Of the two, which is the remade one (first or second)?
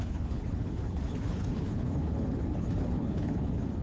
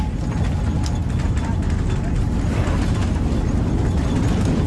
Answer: first